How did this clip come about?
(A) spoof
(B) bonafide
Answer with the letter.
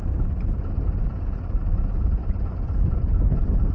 B